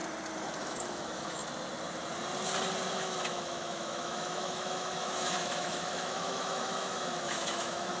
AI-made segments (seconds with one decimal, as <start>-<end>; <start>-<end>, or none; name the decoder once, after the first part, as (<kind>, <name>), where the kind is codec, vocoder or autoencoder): 0.6-1.4 (autoencoder, DAC-VAE); 2.9-8.0